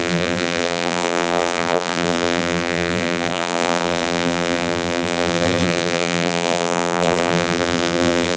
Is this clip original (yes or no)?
no